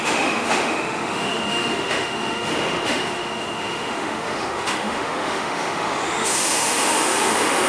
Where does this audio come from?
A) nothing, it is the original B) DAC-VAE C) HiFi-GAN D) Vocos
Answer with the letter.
B